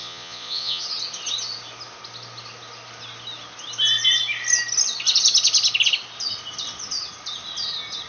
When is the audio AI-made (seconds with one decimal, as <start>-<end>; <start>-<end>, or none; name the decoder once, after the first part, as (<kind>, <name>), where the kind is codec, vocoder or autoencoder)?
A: 0.0-0.8 (vocoder, Vocos)

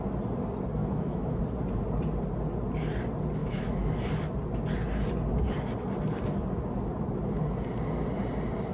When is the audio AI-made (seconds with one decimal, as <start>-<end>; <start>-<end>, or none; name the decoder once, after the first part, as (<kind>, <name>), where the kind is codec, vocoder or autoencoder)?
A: 0.8-1.4 (autoencoder, DAC-VAE); 3.4-4.0

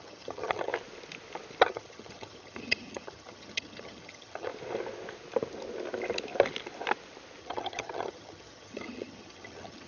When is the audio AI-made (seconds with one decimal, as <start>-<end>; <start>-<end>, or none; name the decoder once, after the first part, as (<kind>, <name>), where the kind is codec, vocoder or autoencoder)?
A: 0.0-0.7 (vocoder, HiFi-GAN); 1.6-4.5; 7.4-9.9

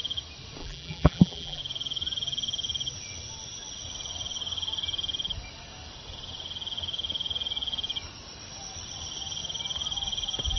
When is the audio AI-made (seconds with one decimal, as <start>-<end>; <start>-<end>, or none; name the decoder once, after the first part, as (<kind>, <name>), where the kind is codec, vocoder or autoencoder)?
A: 0.6-1.6 (vocoder, BigVGAN v2)

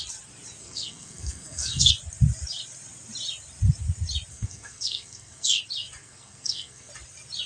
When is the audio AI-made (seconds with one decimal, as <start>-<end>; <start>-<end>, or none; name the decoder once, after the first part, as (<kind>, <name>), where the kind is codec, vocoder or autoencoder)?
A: 0.6-1.9 (codec, SNAC); 4.3-5.6; 6.0-6.9